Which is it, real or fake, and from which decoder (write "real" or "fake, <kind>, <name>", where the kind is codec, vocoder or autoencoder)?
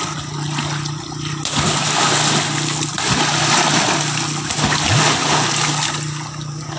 real